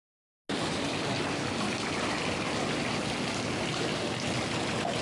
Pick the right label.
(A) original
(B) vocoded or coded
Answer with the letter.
A